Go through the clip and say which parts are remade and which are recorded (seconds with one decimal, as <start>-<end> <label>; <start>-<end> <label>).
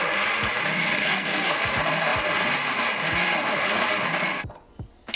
0.0-0.8 recorded; 0.8-1.6 remade; 1.6-5.2 recorded